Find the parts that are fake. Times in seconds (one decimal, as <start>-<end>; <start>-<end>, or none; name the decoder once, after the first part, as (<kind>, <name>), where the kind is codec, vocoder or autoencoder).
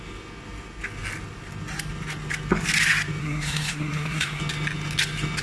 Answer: 3.2-4.4 (codec, SNAC)